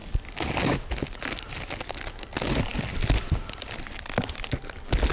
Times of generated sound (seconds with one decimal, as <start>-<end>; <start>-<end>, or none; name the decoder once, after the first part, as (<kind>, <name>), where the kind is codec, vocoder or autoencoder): none